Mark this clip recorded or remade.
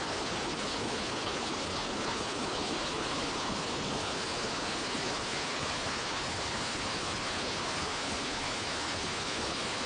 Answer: remade